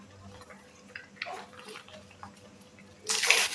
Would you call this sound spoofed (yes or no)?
no